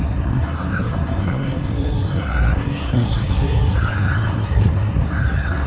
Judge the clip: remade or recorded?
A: remade